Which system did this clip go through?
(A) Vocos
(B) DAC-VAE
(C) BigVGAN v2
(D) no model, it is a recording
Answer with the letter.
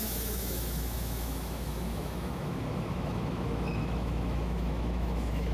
B